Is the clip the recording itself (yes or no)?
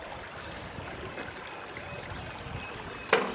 yes